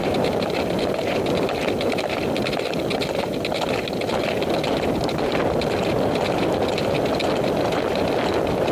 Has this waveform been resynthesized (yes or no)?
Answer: no